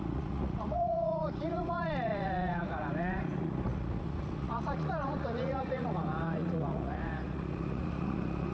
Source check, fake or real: fake